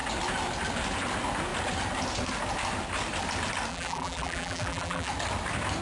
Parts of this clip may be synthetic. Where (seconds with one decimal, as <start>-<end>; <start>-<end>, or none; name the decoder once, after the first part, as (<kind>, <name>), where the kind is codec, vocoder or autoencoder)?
3.7-5.1 (vocoder, BigVGAN v2)